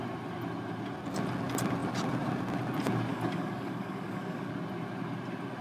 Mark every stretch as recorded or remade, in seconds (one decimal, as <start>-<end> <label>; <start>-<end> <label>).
0.0-3.1 recorded; 3.1-4.5 remade; 4.5-5.6 recorded

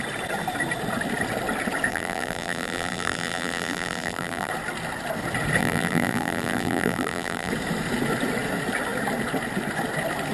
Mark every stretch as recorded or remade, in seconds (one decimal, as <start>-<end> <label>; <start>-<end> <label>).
0.0-1.9 recorded; 1.9-4.5 remade; 4.5-5.6 recorded; 5.6-7.5 remade; 7.5-10.3 recorded

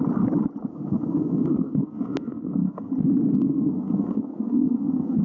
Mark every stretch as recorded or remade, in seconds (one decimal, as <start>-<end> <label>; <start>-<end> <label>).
0.0-0.7 recorded; 0.7-2.9 remade; 2.9-3.3 recorded; 3.3-5.2 remade

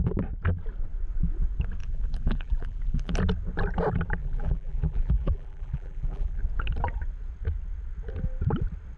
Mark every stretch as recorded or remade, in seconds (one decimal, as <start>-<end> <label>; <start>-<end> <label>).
0.0-1.8 recorded; 1.8-3.2 remade; 3.2-4.2 recorded; 4.2-6.4 remade; 6.4-9.0 recorded

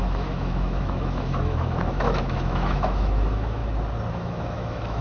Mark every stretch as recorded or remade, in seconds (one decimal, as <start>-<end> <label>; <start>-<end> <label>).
0.0-3.6 remade; 3.6-4.1 recorded; 4.1-5.0 remade

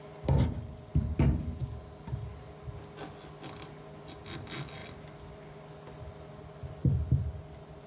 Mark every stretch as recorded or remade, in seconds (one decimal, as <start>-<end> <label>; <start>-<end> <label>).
0.0-7.9 recorded